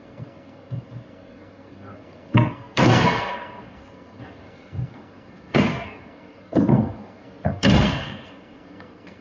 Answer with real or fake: fake